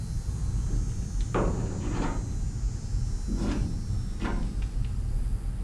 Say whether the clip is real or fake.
real